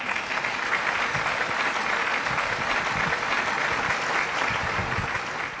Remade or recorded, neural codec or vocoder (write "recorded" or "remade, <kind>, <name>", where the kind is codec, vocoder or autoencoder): recorded